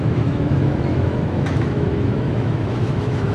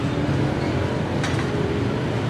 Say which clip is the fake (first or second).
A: first